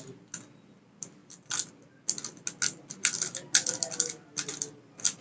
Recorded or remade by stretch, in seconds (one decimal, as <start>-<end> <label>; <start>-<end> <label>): 0.0-5.2 recorded